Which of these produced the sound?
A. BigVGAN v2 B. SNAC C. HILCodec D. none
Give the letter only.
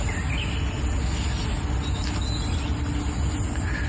D